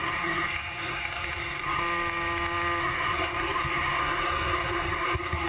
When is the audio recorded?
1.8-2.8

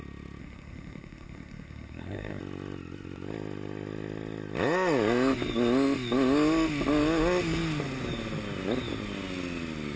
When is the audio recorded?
0.0-0.4; 2.4-10.0